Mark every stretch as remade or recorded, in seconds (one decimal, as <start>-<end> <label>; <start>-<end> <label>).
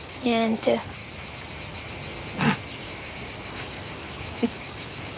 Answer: 0.0-1.0 remade; 1.0-2.8 recorded; 2.8-5.2 remade